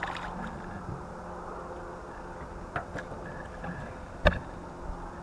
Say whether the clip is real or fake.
real